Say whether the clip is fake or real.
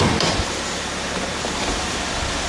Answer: fake